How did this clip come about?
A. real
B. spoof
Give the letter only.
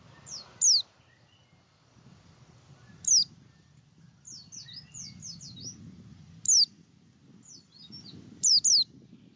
A